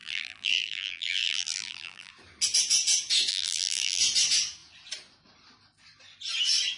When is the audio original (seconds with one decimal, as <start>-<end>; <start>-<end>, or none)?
2.1-3.3; 4.0-6.8